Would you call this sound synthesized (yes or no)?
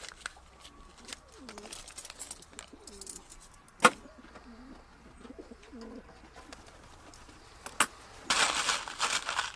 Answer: no